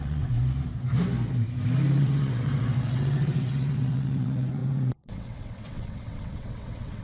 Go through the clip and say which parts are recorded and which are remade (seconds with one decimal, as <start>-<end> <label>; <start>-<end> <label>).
0.0-0.4 remade; 0.4-2.0 recorded; 2.0-7.0 remade